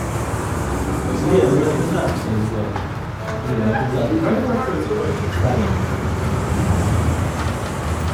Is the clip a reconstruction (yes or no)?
no